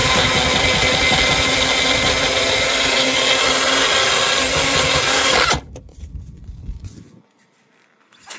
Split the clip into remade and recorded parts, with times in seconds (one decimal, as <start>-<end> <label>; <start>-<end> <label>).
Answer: 0.0-5.9 recorded; 5.9-7.3 remade; 7.3-8.4 recorded